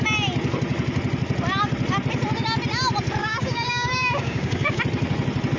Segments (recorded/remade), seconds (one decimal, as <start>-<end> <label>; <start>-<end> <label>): 0.0-3.2 recorded; 3.2-4.8 remade; 4.8-5.6 recorded